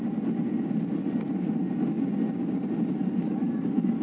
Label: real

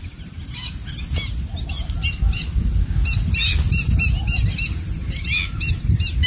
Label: real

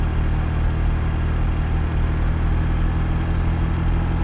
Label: real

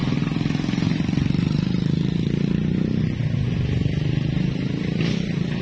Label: real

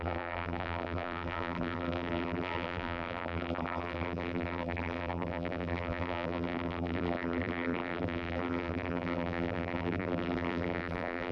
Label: fake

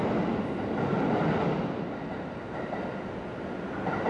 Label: real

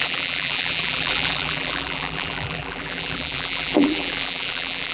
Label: fake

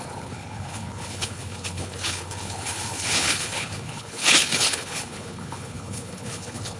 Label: fake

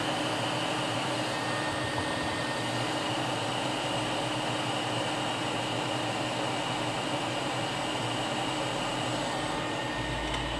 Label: real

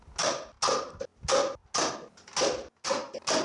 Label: real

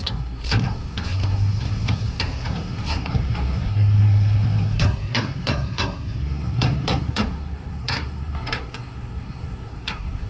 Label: fake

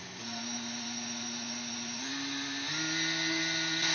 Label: real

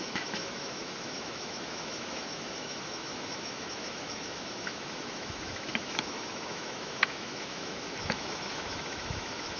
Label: fake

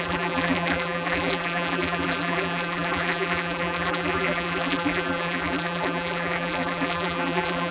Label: fake